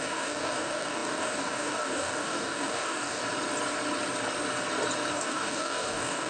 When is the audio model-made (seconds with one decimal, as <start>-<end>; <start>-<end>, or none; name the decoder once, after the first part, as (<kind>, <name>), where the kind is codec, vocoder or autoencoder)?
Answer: 0.0-3.2 (codec, DAC); 5.1-6.3